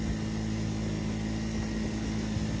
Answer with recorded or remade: recorded